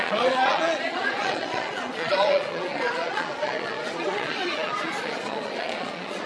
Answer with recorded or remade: remade